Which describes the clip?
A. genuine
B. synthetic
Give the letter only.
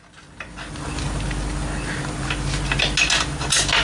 A